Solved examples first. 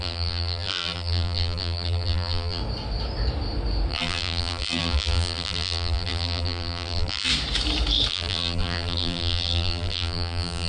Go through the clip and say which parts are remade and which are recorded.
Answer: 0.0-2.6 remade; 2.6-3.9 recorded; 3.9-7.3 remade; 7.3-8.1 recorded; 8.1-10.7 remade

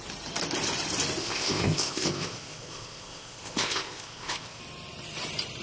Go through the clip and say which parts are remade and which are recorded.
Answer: 0.0-1.2 recorded; 1.2-4.6 remade; 4.6-5.6 recorded

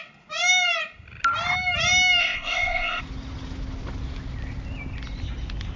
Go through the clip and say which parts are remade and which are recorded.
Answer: 0.0-2.2 recorded; 2.2-3.0 remade; 3.0-5.8 recorded

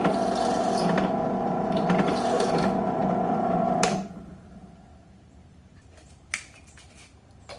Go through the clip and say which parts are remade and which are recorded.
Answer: 0.0-7.6 recorded

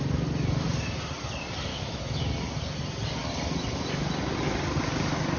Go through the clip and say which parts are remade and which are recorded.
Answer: 0.0-1.7 recorded; 1.7-2.2 remade; 2.2-5.4 recorded

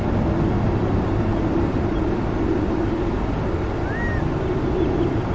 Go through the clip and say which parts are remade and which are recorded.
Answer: 0.0-5.3 recorded

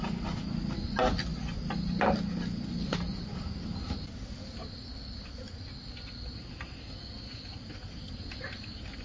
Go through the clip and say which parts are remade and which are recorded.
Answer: 0.0-9.0 recorded